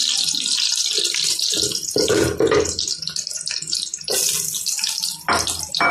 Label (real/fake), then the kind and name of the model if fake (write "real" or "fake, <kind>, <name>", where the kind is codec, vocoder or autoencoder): real